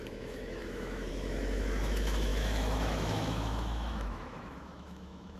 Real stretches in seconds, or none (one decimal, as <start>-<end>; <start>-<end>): none